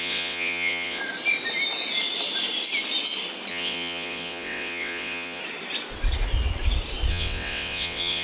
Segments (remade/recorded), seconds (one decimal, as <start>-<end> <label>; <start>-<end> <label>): 0.0-1.0 remade; 1.0-3.5 recorded; 3.5-5.4 remade; 5.4-7.1 recorded; 7.1-8.2 remade